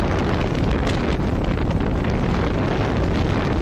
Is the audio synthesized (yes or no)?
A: no